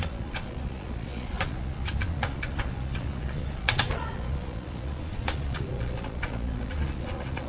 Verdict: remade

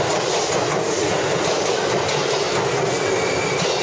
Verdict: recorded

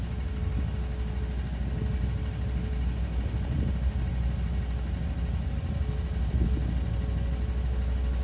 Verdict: recorded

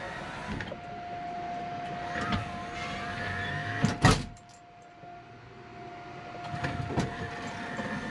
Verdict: recorded